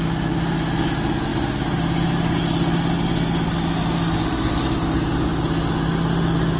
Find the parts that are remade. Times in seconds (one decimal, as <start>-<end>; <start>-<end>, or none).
none